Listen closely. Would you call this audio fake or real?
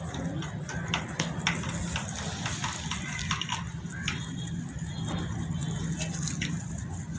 real